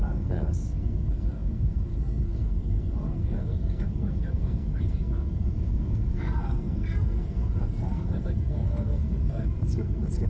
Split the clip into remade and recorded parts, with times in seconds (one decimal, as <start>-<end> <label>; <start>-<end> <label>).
0.0-10.3 remade